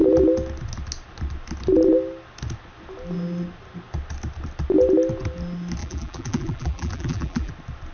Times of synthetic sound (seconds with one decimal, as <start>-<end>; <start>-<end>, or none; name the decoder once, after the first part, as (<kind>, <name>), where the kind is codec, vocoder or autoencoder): 5.8-7.5 (vocoder, BigVGAN v2)